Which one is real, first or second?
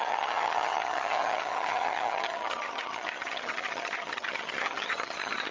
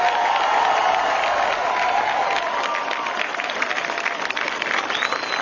second